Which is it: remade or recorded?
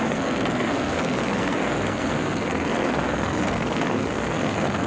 remade